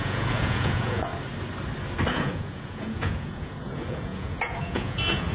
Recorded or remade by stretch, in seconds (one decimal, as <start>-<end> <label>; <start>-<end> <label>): 0.0-1.1 remade; 1.1-2.1 recorded; 2.1-5.3 remade